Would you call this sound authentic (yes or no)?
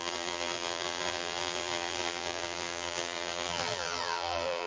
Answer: no